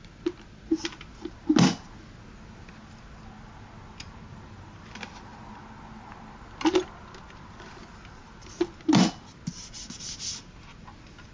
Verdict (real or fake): real